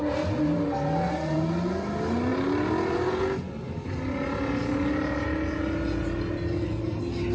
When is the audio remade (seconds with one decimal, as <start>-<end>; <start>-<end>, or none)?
none